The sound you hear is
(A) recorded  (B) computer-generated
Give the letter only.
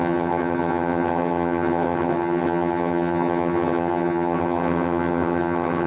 B